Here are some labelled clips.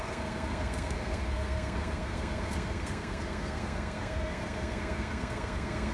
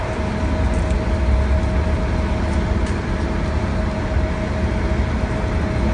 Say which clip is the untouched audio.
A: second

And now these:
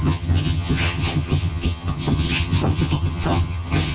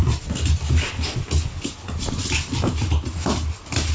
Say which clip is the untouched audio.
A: second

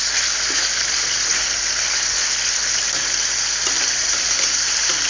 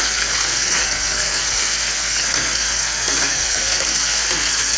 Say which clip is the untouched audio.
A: first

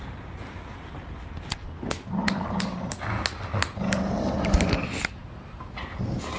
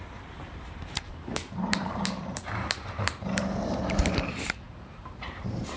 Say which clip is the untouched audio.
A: first